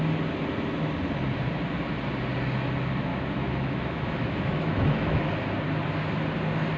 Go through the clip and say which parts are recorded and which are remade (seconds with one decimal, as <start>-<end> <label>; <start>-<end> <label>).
0.0-3.1 recorded; 3.1-5.2 remade; 5.2-6.8 recorded